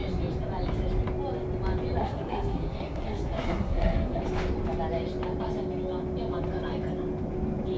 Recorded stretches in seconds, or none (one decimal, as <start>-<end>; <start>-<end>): 0.0-2.0; 4.2-7.8